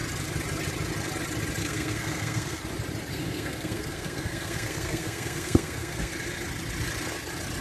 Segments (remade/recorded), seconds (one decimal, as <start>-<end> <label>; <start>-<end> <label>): 0.0-1.6 recorded; 1.6-2.6 remade; 2.6-3.1 recorded; 3.1-6.1 remade; 6.1-7.6 recorded